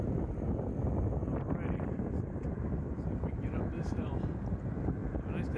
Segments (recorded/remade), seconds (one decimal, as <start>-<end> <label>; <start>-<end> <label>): 0.0-1.2 recorded; 1.2-4.6 remade; 4.6-5.6 recorded